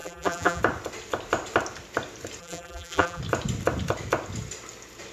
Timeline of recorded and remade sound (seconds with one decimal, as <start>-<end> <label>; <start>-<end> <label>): 0.0-0.6 remade; 0.6-2.4 recorded; 2.4-3.2 remade; 3.2-5.1 recorded